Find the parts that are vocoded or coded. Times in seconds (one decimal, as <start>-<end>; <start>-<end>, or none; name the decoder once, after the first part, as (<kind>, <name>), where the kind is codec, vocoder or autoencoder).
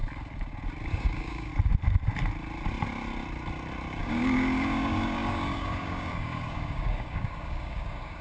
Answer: 0.9-1.5 (codec, DAC); 4.0-8.2